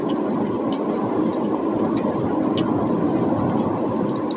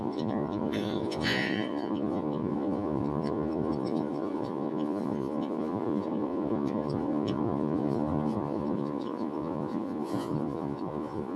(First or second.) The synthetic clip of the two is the second